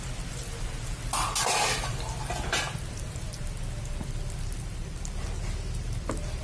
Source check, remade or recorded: recorded